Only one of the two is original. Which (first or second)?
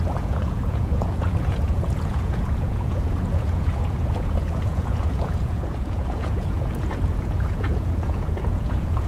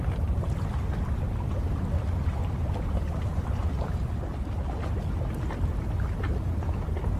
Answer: second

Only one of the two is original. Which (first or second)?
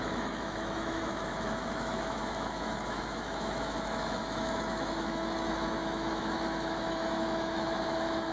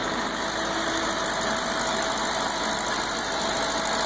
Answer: second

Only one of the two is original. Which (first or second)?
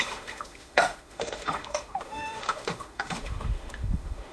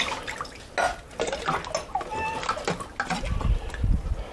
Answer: second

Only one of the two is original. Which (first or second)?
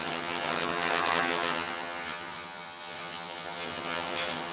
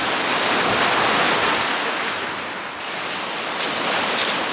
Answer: second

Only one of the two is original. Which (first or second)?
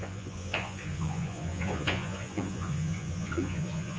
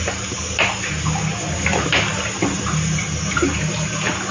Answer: second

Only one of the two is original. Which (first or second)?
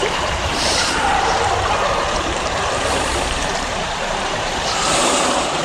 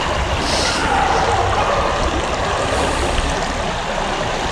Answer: second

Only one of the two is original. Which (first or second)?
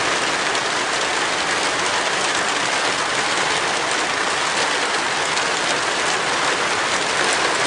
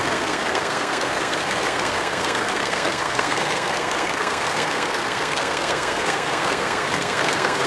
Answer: first